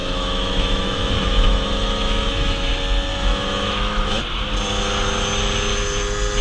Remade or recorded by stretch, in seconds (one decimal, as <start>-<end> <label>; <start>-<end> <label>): 0.0-2.7 remade; 2.7-3.1 recorded; 3.1-4.2 remade; 4.2-6.4 recorded